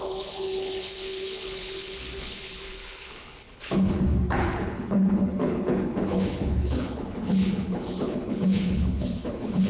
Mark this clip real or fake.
fake